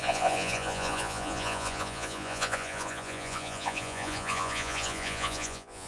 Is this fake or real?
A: fake